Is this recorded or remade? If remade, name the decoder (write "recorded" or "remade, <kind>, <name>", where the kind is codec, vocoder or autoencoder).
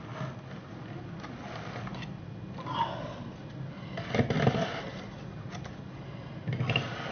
recorded